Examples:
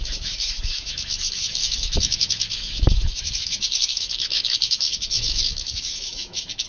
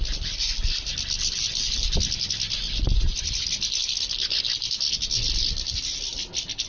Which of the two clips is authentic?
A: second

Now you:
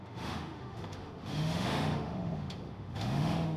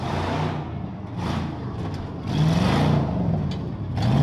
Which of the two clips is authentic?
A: second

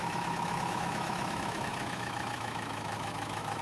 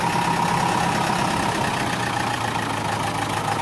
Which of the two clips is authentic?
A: second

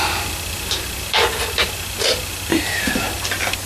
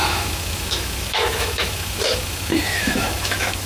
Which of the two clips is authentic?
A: first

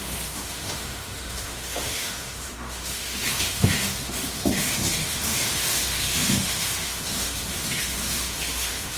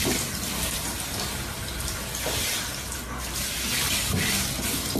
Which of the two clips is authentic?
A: second